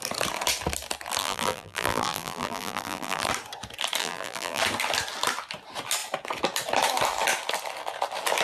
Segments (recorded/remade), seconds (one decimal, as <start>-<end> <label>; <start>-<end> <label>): 0.0-1.2 recorded; 1.2-3.3 remade; 3.3-4.0 recorded; 4.0-4.6 remade; 4.6-8.4 recorded